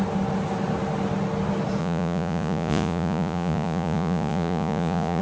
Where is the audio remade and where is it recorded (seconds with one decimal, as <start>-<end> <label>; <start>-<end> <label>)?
0.0-1.8 recorded; 1.8-5.2 remade